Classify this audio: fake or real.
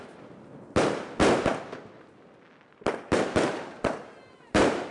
real